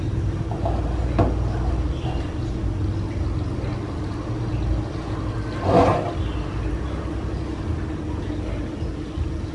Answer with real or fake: real